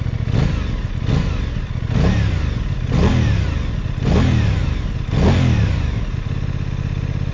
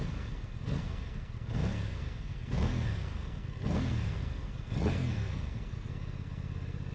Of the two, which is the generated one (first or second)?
second